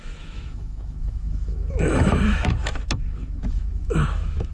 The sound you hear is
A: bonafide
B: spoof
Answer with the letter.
B